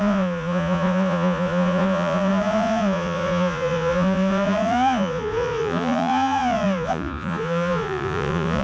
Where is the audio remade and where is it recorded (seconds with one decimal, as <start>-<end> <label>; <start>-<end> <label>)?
0.0-8.6 remade